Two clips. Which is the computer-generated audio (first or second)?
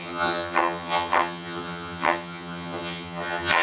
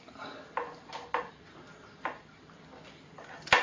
first